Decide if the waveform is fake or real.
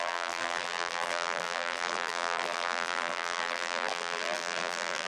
fake